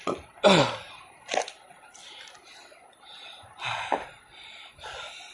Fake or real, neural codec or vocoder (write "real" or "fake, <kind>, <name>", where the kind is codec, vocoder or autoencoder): real